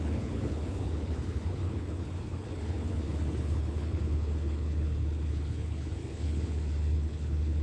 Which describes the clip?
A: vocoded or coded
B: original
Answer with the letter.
A